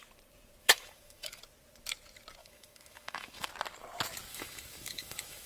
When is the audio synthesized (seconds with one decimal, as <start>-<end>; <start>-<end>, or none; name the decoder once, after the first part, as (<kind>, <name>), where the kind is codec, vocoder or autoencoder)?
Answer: 0.6-1.4 (autoencoder, DAC-VAE); 2.4-3.5; 4.3-5.5

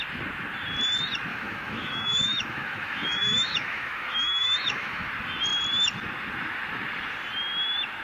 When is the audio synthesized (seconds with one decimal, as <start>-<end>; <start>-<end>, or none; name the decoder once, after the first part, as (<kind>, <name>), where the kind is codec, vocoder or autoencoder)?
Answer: 1.3-5.1 (autoencoder, DAC-VAE)